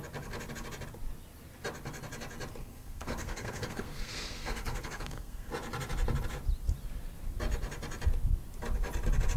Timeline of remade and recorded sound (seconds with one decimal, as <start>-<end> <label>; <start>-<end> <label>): 0.0-2.6 recorded; 2.6-5.5 remade; 5.5-9.4 recorded